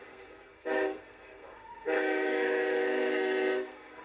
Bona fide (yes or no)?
no